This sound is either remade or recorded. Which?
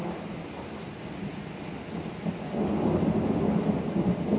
recorded